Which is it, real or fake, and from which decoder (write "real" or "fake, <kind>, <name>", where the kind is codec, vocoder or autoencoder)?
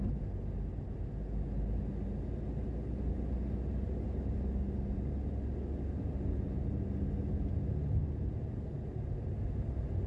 real